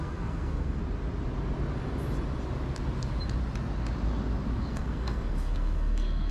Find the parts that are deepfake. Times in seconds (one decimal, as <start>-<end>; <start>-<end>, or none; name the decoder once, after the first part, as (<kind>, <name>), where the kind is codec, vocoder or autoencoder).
0.0-0.8 (codec, SNAC); 4.6-6.3